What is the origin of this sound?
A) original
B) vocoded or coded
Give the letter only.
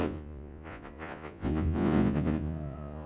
B